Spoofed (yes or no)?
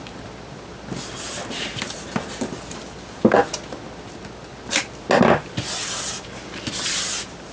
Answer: no